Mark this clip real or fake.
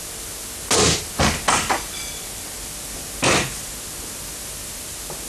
real